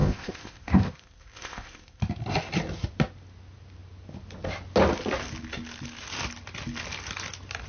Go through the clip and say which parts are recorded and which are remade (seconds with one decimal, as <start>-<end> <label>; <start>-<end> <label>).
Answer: 0.0-2.0 remade; 2.0-7.7 recorded